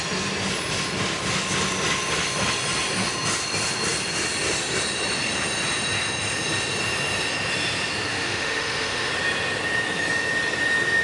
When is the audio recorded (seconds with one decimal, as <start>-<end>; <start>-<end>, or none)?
0.0-8.1; 9.1-11.0